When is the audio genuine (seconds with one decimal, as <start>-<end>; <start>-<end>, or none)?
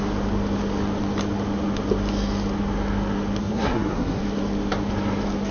0.0-3.4; 4.2-5.5